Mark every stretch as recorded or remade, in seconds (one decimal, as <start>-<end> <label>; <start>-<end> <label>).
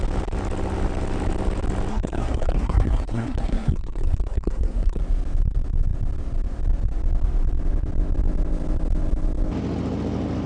0.0-1.9 recorded; 1.9-5.0 remade; 5.0-10.5 recorded